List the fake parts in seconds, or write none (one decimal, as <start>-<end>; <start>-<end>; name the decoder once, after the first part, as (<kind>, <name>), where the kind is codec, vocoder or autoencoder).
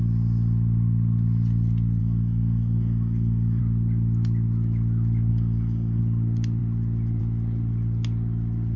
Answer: 2.0-3.6 (codec, DAC); 5.3-6.0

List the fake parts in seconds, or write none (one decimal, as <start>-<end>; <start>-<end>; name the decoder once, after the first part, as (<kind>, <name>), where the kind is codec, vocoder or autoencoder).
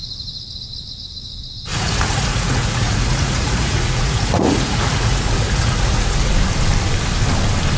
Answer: 1.7-6.3 (vocoder, Vocos)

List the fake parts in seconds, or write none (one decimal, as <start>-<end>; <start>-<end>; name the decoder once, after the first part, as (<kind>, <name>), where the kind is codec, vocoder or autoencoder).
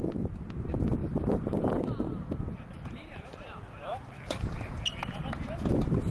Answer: 1.0-4.7 (vocoder, BigVGAN v2)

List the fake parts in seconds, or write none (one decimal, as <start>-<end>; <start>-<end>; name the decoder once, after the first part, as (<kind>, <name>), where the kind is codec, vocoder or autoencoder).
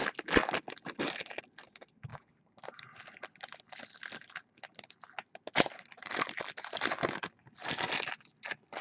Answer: none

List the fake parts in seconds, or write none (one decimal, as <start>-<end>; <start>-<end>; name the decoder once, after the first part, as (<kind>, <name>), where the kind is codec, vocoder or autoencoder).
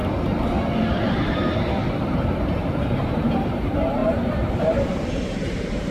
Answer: 1.0-1.8 (vocoder, BigVGAN v2); 2.4-5.9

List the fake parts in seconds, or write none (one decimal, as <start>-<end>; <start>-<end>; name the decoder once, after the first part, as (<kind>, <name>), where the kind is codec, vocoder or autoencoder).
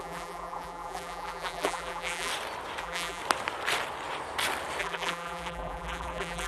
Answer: 0.0-2.3 (vocoder, BigVGAN v2); 2.8-3.2; 4.8-6.5